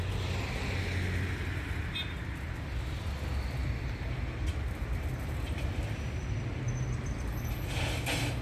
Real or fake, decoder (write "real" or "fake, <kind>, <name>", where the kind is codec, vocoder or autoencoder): real